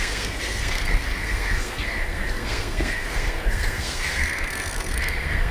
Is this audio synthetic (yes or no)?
yes